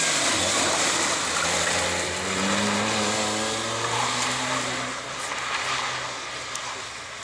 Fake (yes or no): no